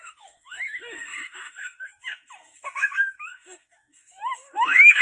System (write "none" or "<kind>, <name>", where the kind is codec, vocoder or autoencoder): autoencoder, DAC-VAE